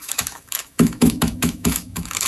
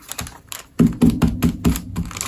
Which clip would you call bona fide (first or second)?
second